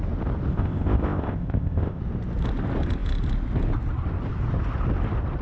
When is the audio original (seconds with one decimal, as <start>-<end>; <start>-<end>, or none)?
0.0-0.5; 2.0-5.4